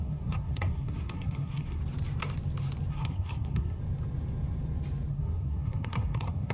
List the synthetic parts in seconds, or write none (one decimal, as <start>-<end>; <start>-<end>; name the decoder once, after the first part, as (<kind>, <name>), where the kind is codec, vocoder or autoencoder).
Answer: 0.0-1.8 (codec, SNAC); 2.9-3.8; 5.1-6.5

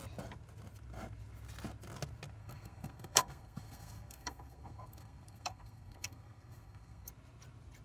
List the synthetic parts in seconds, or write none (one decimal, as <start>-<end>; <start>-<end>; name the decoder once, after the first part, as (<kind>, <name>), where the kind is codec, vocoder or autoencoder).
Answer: 2.4-7.1 (codec, SNAC)

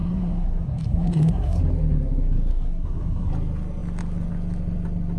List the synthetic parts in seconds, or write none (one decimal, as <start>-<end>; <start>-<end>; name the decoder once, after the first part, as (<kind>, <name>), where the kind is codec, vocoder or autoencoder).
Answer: 0.0-1.6 (codec, SNAC); 2.5-3.3

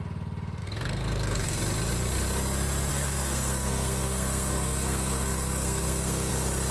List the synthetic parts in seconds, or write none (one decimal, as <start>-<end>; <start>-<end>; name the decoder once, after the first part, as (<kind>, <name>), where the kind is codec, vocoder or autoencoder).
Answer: 0.6-1.6 (codec, SNAC); 2.9-6.3

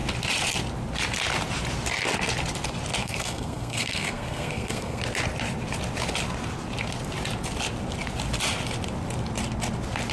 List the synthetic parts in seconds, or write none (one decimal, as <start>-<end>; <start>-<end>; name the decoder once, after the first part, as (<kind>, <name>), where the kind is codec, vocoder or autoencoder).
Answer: 3.0-5.0 (codec, SNAC)

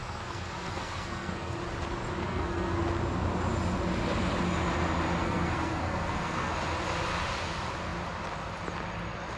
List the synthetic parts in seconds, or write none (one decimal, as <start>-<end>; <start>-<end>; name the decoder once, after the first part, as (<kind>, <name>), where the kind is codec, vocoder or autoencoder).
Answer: 0.0-1.6 (codec, SNAC); 2.2-2.8; 5.2-6.5